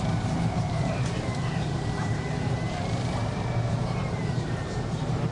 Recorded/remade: remade